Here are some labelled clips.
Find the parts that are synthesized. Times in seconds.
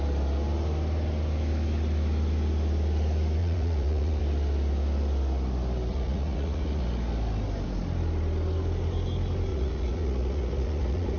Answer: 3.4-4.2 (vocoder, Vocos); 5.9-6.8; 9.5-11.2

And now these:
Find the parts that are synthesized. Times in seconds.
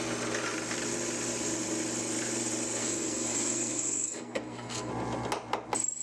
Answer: 2.8-4.9 (codec, SNAC)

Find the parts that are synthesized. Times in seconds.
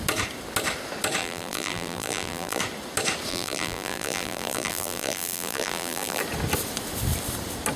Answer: 1.2-2.6 (vocoder, BigVGAN v2); 3.3-6.2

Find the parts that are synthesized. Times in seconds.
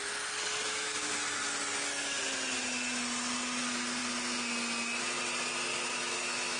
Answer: 0.6-1.1 (autoencoder, DAC-VAE); 5.7-6.6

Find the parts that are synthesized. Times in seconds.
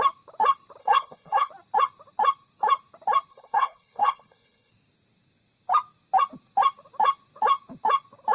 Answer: 0.8-1.5 (codec, HILCodec); 3.3-4.7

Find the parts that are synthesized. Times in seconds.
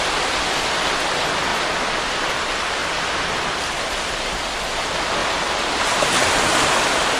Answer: none